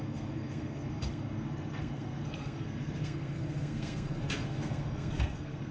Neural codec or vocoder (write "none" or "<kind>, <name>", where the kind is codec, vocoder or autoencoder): codec, SNAC